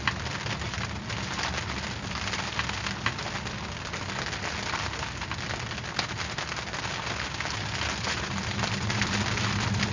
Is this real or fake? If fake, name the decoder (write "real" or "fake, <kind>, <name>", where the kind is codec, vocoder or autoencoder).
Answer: real